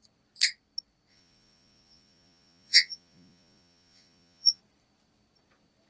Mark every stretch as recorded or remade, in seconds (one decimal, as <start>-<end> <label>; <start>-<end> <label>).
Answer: 0.0-1.1 recorded; 1.1-4.6 remade; 4.6-5.9 recorded